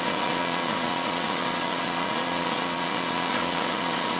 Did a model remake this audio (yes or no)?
yes